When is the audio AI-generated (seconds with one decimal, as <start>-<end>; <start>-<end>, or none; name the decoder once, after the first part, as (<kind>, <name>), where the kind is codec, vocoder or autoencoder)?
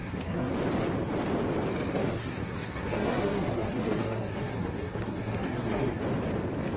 0.0-0.5 (codec, SNAC); 1.9-6.0